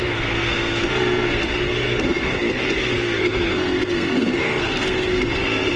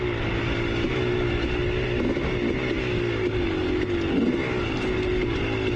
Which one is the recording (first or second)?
second